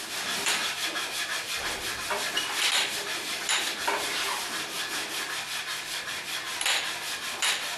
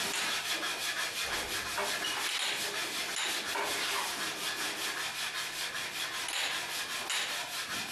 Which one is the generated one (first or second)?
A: first